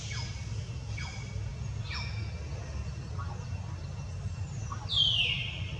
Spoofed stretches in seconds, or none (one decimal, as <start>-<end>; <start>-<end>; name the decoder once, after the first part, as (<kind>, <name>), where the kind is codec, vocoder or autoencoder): none